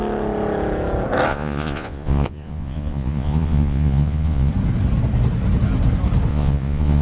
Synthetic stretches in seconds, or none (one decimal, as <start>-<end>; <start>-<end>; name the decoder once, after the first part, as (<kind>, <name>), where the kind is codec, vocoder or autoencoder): 1.3-4.5 (vocoder, Vocos); 6.3-7.0